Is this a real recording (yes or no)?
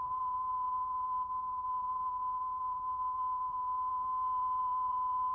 no